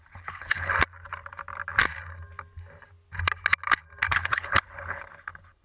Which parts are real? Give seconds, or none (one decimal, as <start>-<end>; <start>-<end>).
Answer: 0.7-4.1